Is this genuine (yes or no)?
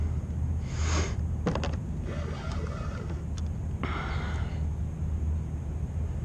yes